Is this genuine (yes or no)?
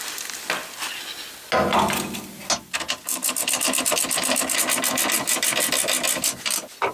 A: yes